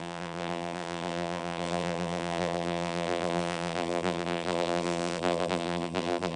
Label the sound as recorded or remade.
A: remade